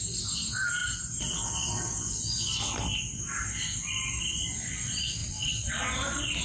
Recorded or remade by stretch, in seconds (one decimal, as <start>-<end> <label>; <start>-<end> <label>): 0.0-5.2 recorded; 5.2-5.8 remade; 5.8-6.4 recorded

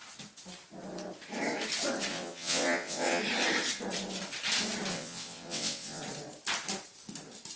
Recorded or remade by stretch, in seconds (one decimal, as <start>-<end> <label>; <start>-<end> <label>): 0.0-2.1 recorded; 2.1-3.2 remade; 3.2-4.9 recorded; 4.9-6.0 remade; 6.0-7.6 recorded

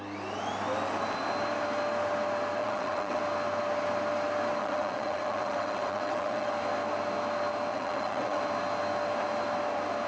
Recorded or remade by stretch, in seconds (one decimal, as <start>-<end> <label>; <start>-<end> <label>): 0.0-2.6 recorded; 2.6-3.2 remade; 3.2-4.6 recorded; 4.6-6.5 remade; 6.5-7.7 recorded; 7.7-8.4 remade; 8.4-10.1 recorded

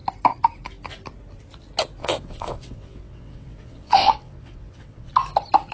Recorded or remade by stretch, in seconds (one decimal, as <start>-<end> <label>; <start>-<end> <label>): 0.0-2.0 recorded; 2.0-5.1 remade; 5.1-5.7 recorded

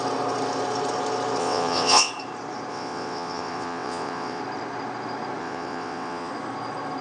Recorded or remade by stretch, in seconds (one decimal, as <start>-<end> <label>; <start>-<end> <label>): 0.0-1.4 recorded; 1.4-2.1 remade; 2.1-2.7 recorded; 2.7-4.4 remade; 4.4-5.4 recorded; 5.4-6.3 remade; 6.3-7.0 recorded